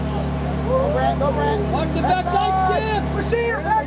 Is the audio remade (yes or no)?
no